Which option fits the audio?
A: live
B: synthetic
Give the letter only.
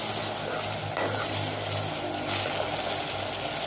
A